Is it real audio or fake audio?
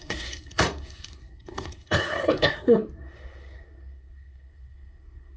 fake